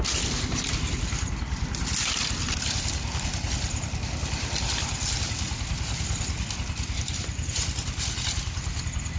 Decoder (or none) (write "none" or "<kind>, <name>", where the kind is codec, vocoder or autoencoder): none